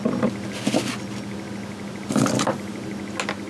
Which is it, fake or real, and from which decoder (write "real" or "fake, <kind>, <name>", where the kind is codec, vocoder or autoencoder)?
real